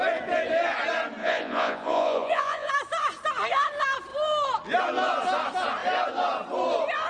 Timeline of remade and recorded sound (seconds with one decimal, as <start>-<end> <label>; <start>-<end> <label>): 0.0-1.2 recorded; 1.2-2.7 remade; 2.7-7.1 recorded